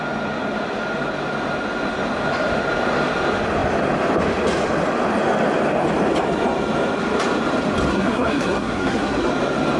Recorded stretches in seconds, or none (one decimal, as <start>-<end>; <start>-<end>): 0.0-7.9; 9.3-9.8